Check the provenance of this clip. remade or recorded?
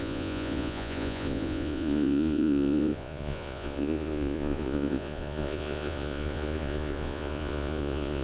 remade